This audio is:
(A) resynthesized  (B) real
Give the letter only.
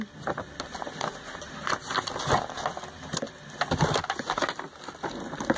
B